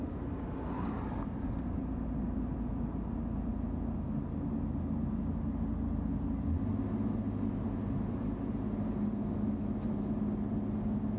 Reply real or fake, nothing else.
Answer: real